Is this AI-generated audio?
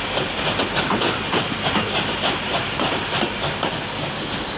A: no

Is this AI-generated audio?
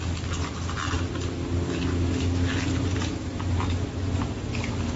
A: no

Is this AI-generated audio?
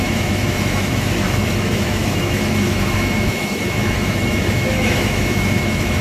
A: yes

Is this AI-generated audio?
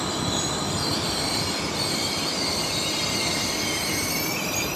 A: no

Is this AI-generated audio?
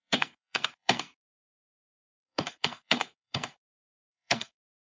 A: yes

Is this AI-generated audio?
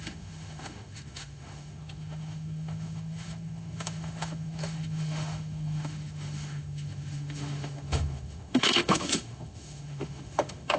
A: yes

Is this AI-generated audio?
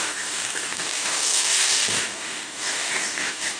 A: yes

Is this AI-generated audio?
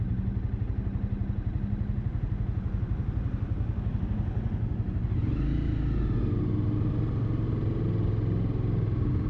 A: no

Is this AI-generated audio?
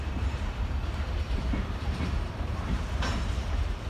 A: yes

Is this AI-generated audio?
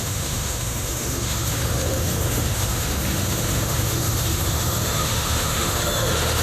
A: yes